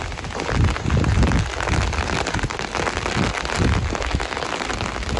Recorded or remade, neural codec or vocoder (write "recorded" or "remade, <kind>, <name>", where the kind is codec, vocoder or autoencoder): recorded